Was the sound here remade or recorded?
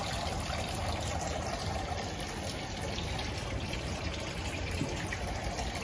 recorded